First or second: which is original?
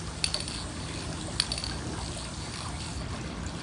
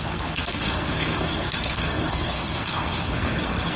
first